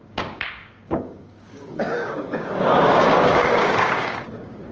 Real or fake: fake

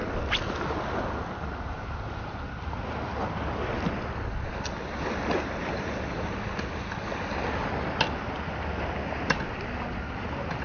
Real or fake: real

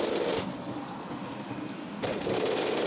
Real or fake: real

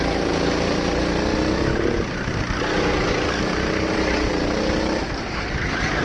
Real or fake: real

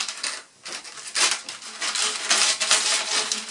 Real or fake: real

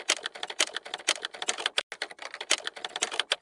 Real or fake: real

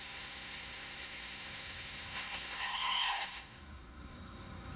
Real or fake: fake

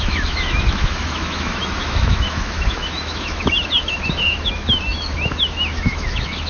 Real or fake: fake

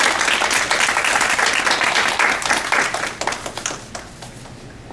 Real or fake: real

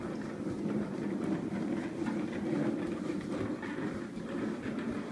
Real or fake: real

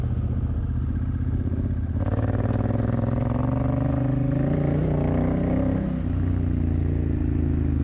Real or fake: real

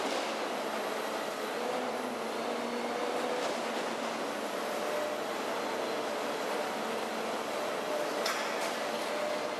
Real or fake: real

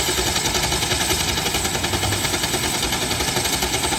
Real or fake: real